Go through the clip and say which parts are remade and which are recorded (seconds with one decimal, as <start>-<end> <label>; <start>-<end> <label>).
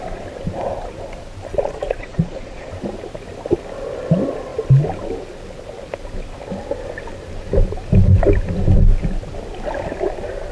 0.0-1.5 recorded; 1.5-2.7 remade; 2.7-10.5 recorded